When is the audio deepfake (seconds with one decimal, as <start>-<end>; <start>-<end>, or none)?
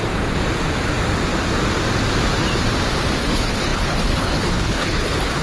3.2-5.4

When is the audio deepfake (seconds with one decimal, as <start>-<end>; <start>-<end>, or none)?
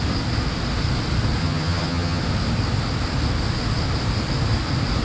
1.4-2.2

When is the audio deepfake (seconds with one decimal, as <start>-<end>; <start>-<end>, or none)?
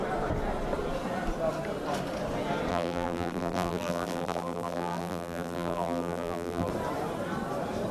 2.7-6.7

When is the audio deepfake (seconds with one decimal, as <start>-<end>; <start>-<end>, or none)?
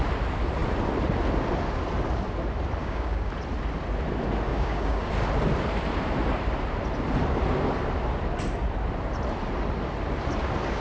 2.8-3.3; 4.5-5.1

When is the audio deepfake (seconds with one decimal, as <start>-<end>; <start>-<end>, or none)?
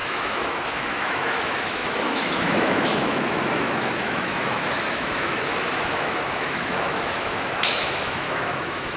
0.0-9.0